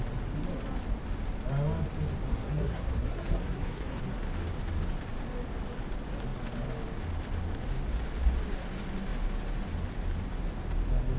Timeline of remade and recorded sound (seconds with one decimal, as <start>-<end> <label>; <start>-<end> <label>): 0.0-2.3 recorded; 2.3-4.0 remade; 4.0-11.2 recorded